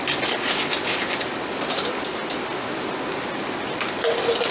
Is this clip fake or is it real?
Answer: real